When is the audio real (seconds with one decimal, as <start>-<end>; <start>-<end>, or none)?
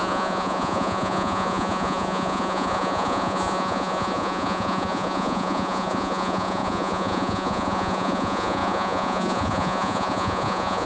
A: none